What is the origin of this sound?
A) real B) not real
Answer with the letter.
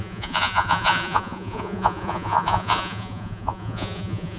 B